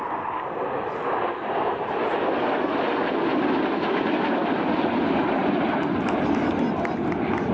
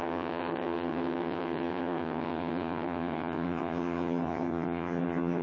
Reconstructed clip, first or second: second